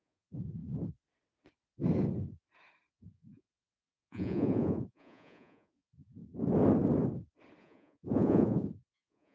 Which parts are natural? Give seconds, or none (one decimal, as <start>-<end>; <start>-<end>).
0.6-2.9; 6.2-7.6